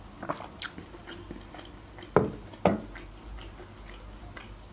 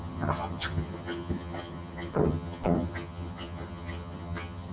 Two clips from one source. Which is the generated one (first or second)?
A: second